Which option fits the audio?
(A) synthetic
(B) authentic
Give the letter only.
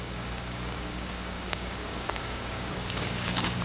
A